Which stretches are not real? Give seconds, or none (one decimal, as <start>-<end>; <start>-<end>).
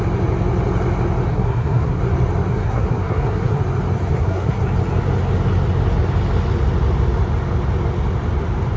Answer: 1.3-2.0; 2.5-3.6; 4.1-4.6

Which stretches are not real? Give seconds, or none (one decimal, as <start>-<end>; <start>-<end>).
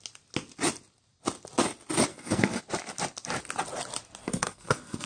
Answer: 2.1-2.6; 4.2-5.1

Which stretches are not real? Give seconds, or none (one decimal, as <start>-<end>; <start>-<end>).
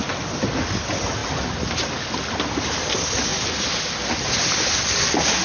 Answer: none